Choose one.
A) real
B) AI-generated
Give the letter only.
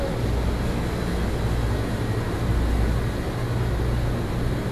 A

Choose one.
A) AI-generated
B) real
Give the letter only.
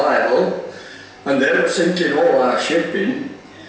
B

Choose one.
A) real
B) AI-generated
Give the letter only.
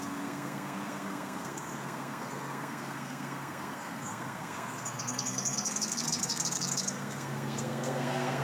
B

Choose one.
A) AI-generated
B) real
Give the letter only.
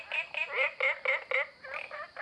B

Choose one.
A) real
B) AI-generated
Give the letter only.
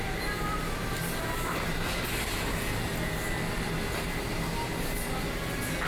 A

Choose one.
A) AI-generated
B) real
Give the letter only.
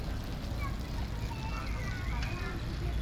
B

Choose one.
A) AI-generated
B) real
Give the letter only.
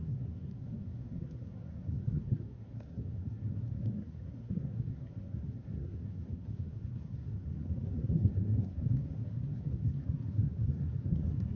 A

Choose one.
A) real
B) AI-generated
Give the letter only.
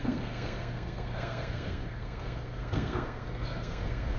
B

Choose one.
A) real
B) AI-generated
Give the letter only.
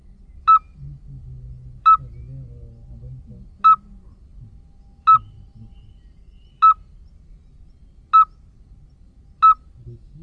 A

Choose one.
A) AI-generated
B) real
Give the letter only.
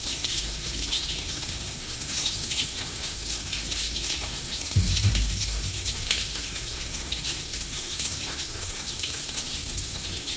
A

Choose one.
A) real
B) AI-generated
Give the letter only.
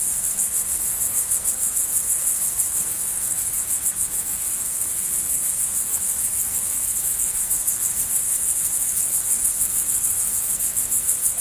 B